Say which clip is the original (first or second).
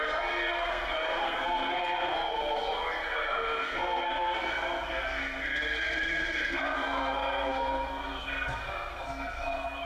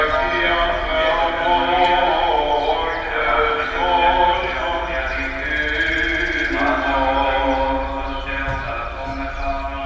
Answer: second